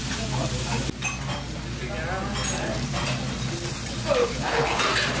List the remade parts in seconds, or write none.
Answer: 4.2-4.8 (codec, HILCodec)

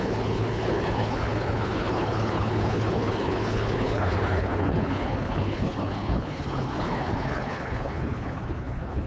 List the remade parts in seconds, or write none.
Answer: 0.0-9.1 (codec, HILCodec)